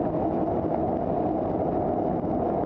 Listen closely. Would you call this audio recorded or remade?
recorded